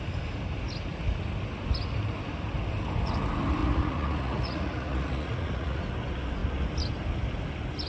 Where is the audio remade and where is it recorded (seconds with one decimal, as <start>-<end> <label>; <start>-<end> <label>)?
0.0-3.6 recorded; 3.6-5.8 remade; 5.8-7.9 recorded